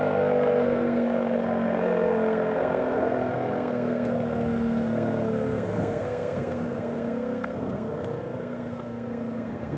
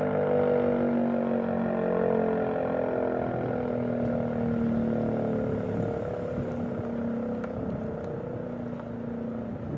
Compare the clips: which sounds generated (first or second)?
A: first